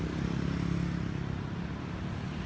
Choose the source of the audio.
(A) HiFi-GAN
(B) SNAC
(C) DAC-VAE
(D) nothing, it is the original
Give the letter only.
D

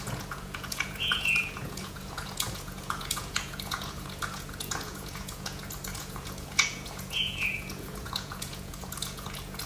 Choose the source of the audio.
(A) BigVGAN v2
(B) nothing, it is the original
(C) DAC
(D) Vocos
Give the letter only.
D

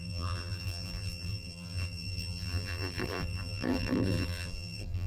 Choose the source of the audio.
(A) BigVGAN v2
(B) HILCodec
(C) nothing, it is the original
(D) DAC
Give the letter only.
A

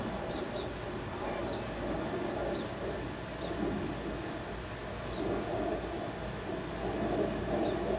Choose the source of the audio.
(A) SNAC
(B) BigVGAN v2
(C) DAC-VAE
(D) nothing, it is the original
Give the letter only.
D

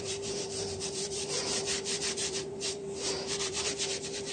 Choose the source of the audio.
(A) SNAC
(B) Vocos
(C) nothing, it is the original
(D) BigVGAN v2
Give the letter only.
D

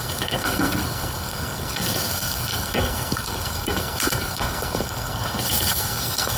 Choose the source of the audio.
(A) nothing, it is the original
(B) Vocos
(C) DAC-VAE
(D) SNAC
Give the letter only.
D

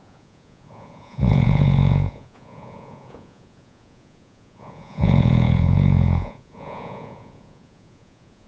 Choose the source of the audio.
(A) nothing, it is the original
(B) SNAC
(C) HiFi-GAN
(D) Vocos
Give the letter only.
D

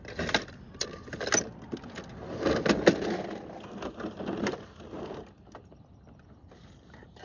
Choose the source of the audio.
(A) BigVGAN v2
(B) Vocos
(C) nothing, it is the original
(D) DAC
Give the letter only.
C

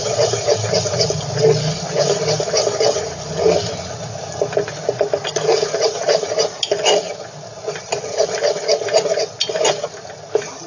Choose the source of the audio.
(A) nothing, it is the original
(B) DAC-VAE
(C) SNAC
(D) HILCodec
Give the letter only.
A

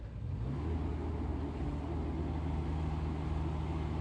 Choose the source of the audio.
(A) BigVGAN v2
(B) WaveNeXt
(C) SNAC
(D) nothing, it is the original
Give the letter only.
D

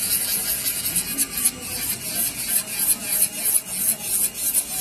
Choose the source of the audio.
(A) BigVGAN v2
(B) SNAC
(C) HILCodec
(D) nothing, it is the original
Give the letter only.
D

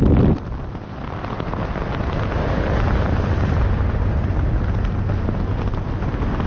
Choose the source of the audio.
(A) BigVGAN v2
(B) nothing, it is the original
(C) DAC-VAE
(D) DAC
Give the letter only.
B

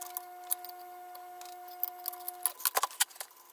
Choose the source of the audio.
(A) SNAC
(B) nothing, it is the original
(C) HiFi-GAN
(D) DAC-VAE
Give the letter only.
B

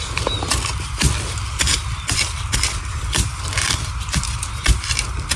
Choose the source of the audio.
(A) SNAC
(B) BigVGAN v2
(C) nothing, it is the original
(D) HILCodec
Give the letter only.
B